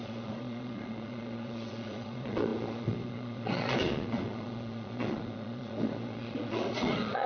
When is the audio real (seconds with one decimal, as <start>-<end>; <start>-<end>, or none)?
none